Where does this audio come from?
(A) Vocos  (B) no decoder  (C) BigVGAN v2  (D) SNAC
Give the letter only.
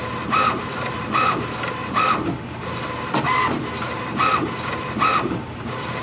C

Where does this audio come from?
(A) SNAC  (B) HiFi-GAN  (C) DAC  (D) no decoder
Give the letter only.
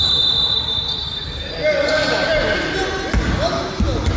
D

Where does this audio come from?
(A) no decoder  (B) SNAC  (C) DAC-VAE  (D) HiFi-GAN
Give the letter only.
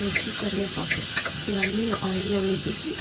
D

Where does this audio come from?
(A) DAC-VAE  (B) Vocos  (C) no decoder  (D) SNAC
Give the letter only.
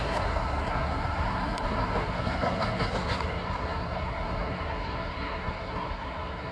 D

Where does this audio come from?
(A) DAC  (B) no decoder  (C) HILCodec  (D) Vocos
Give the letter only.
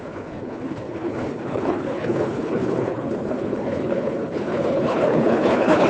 C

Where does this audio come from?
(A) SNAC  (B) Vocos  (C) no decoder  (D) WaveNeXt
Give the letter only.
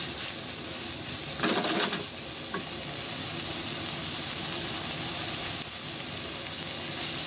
C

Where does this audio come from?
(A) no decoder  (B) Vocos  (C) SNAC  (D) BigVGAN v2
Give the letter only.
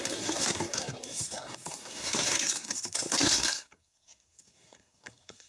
C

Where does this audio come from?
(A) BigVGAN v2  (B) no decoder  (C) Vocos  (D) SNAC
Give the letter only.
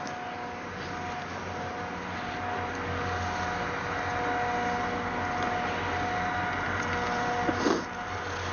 B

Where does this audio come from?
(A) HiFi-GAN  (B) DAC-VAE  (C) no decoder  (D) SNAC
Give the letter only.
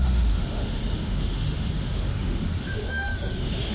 B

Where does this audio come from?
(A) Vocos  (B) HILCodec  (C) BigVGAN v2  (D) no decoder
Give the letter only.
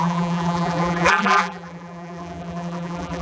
C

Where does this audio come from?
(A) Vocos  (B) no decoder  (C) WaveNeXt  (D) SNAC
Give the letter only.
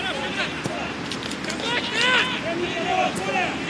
B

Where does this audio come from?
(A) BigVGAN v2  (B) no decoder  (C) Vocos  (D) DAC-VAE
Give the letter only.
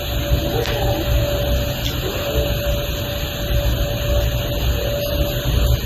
B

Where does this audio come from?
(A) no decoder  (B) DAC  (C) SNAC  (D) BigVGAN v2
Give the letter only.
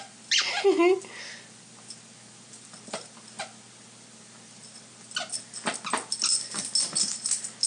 A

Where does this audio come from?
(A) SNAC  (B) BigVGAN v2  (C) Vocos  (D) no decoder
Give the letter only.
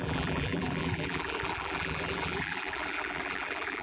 B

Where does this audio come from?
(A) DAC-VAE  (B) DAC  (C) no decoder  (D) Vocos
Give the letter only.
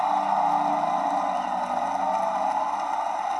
C